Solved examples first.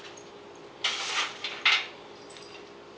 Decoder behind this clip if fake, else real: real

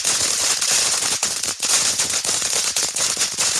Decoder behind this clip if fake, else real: fake, vocoder, Vocos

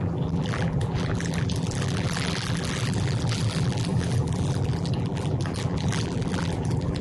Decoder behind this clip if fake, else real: fake, vocoder, BigVGAN v2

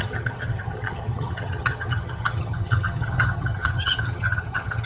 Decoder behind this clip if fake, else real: fake, vocoder, HiFi-GAN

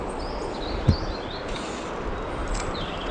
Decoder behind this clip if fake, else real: real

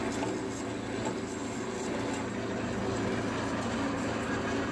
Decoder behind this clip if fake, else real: real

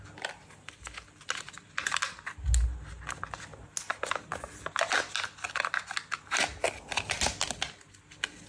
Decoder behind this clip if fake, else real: real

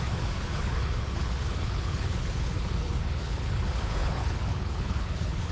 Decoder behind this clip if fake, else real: fake, codec, HILCodec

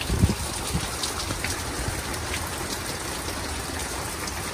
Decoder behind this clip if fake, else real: real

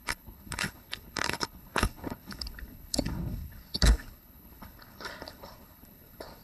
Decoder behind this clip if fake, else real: fake, codec, HILCodec